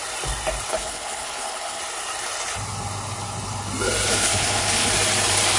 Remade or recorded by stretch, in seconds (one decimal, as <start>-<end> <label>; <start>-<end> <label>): 0.0-0.7 recorded; 0.7-1.8 remade; 1.8-4.1 recorded; 4.1-4.9 remade; 4.9-5.6 recorded